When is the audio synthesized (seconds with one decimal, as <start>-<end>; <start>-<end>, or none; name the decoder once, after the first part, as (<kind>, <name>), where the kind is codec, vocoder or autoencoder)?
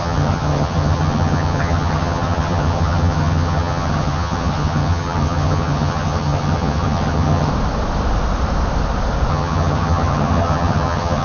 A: 0.0-7.5 (vocoder, HiFi-GAN); 9.3-11.2